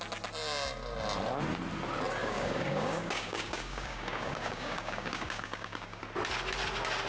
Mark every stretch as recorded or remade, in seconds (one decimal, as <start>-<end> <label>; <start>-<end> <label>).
0.0-2.2 recorded; 2.2-6.0 remade; 6.0-7.1 recorded